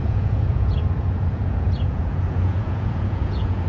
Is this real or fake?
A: fake